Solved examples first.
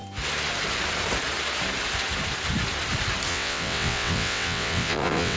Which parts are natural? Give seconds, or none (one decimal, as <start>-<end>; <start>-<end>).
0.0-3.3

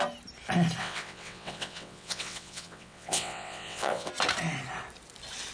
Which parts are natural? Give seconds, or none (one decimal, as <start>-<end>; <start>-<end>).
0.0-0.8; 4.1-5.5

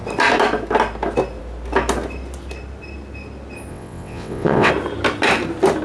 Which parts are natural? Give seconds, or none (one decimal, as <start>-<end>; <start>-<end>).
0.0-3.7; 4.7-5.8